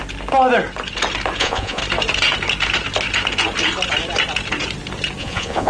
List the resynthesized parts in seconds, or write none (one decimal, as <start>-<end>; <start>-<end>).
1.4-1.8; 5.2-5.7